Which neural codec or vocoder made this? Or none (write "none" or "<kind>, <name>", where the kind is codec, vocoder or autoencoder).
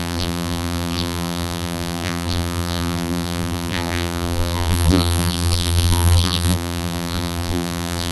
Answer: vocoder, BigVGAN v2